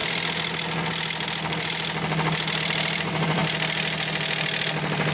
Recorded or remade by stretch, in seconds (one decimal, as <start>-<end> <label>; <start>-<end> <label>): 0.0-2.6 recorded; 2.6-3.4 remade; 3.4-5.1 recorded